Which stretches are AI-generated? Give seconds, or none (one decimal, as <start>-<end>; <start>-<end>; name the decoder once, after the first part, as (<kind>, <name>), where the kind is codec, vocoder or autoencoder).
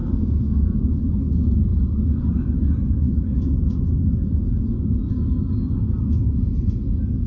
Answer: 0.0-0.8 (codec, SNAC)